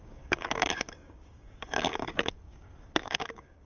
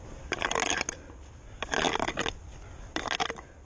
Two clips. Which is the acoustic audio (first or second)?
second